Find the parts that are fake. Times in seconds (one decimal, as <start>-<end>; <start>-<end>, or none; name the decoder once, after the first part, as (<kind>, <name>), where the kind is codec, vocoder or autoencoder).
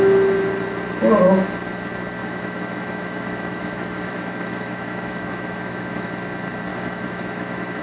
2.2-6.1 (autoencoder, DAC-VAE); 6.7-7.8